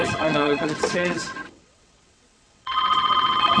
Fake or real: fake